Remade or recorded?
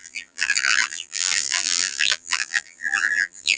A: remade